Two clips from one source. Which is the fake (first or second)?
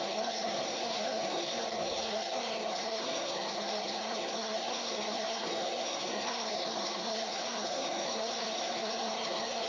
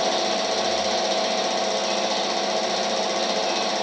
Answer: first